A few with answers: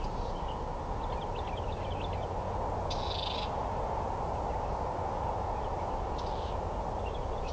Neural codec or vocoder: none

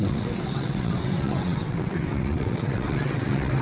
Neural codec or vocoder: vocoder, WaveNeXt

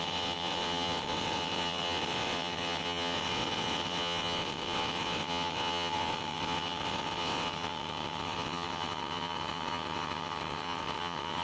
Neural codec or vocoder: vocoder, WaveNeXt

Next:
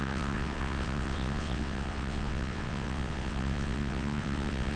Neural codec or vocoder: vocoder, WaveNeXt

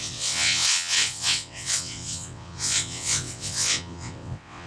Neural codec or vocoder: vocoder, WaveNeXt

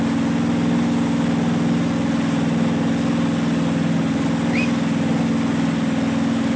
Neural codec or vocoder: none